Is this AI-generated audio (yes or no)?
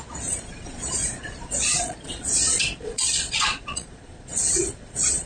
yes